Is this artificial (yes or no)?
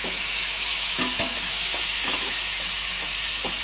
yes